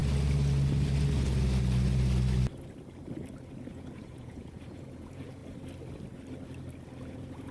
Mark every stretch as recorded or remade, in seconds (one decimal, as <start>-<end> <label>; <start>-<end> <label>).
0.0-3.7 recorded; 3.7-5.4 remade; 5.4-7.1 recorded; 7.1-7.5 remade